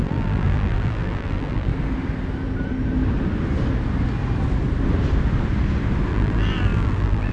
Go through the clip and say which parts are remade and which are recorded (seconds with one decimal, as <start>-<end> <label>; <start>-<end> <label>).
0.0-1.7 remade; 1.7-6.1 recorded; 6.1-7.3 remade